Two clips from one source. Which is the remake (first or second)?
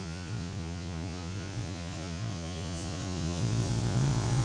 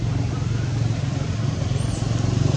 first